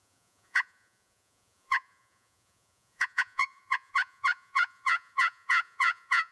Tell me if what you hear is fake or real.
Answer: fake